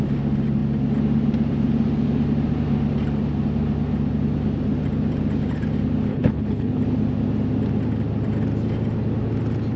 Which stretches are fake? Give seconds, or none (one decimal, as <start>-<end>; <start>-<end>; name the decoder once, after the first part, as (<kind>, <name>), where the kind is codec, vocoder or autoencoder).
6.1-6.8 (codec, HILCodec)